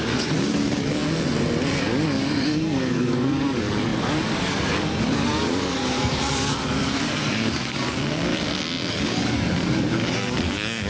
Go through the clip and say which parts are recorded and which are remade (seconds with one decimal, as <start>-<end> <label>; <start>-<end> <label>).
0.0-1.0 remade; 1.0-1.8 recorded; 1.8-8.3 remade; 8.3-8.9 recorded; 8.9-10.9 remade